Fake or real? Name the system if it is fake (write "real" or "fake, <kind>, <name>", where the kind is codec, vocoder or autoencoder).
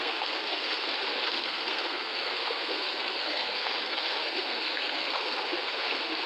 fake, codec, SNAC